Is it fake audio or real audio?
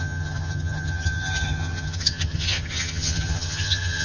fake